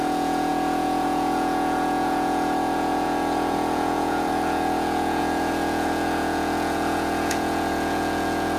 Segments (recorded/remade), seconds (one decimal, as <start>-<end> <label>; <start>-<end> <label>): 0.0-8.6 remade

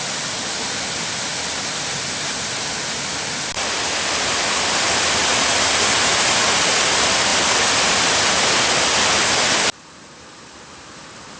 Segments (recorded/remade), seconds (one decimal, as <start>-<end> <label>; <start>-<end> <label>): 0.0-11.4 recorded

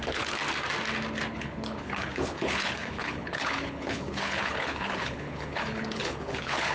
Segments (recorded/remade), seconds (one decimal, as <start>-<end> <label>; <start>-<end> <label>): 0.0-0.4 remade; 0.4-1.3 recorded; 1.3-6.7 remade